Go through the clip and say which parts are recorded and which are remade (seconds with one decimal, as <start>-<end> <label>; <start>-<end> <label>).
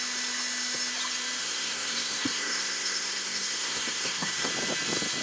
0.0-1.4 recorded; 1.4-4.5 remade; 4.5-5.2 recorded